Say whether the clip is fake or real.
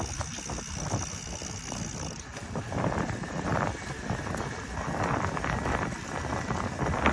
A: real